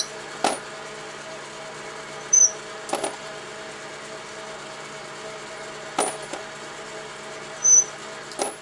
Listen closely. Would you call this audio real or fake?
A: real